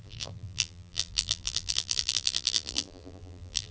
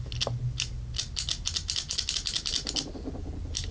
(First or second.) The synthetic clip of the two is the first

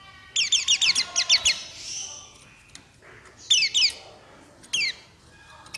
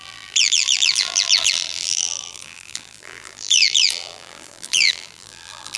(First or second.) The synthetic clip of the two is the second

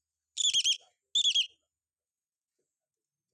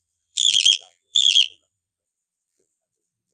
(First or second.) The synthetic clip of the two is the second